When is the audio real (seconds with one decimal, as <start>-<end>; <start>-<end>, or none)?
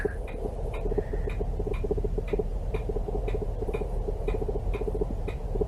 1.1-1.7